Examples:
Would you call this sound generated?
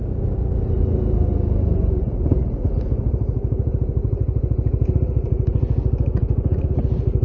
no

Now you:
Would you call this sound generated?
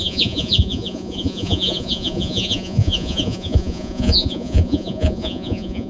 yes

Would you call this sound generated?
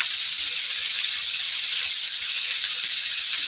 no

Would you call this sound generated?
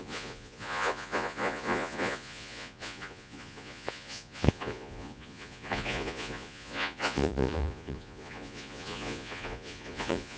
yes